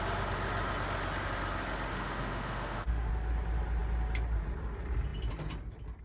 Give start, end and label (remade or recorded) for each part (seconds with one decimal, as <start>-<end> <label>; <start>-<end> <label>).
0.0-1.9 recorded; 1.9-3.1 remade; 3.1-6.0 recorded